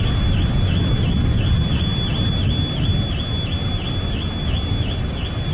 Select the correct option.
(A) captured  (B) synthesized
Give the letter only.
A